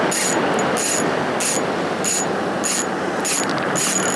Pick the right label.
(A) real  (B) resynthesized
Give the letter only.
A